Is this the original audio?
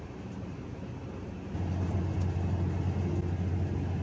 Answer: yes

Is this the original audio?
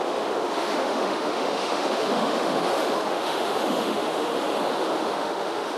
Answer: no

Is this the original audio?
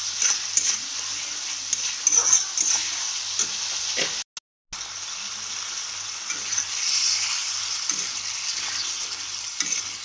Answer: yes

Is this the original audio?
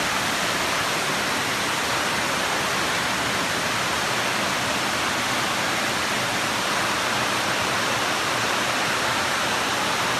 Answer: yes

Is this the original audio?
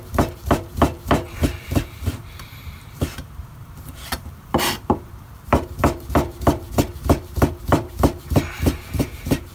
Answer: no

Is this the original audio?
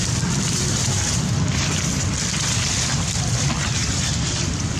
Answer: no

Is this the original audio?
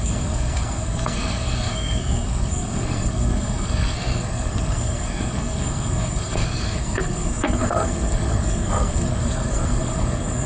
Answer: no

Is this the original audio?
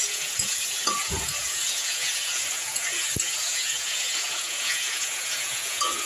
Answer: no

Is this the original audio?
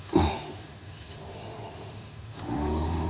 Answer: no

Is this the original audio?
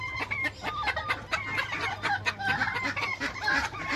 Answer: yes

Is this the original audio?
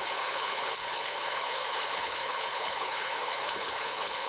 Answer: no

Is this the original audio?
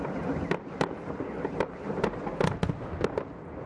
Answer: yes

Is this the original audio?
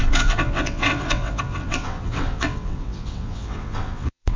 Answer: no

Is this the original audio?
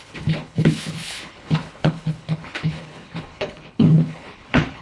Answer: no